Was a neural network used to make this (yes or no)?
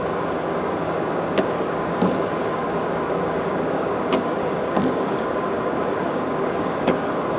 yes